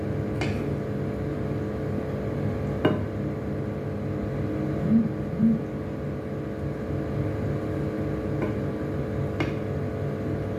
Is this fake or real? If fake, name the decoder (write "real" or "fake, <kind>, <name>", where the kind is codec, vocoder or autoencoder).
real